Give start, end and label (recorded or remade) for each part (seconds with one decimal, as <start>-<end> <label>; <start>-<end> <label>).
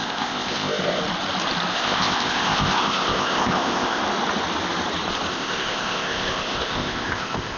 0.0-1.0 remade; 1.0-1.7 recorded; 1.7-4.0 remade; 4.0-5.3 recorded; 5.3-7.6 remade